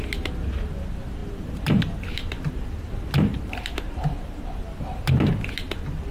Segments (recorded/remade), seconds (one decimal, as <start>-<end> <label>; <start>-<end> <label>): 0.0-1.2 recorded; 1.2-2.5 remade; 2.5-3.3 recorded; 3.3-4.5 remade; 4.5-6.1 recorded